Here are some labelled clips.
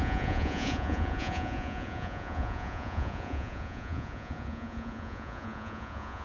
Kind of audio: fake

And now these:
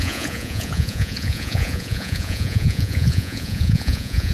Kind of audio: fake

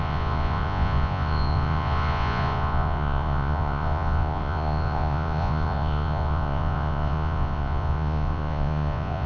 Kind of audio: fake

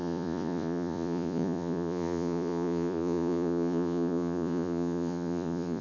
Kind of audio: fake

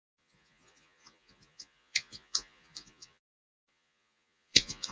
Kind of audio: fake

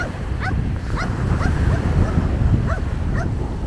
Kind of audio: real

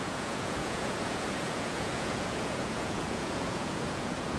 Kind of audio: fake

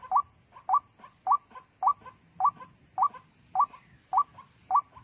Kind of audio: real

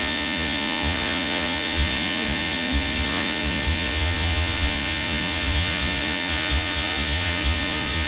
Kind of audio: fake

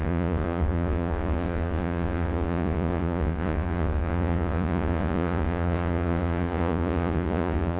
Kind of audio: fake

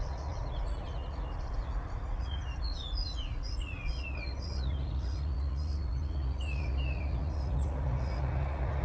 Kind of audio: fake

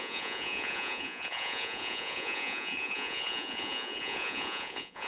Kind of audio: fake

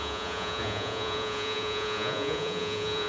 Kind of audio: fake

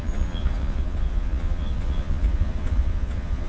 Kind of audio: fake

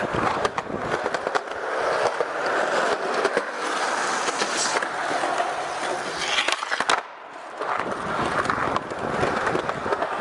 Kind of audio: real